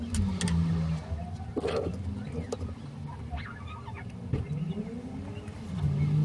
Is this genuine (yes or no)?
yes